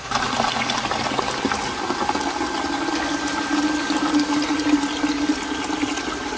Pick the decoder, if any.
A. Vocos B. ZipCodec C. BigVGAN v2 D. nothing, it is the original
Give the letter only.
D